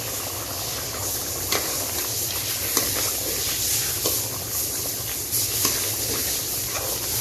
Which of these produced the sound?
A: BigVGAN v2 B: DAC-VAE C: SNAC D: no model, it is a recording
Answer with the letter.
D